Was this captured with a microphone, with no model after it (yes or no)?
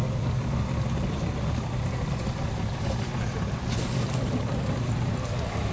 yes